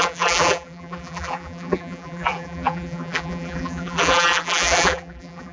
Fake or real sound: fake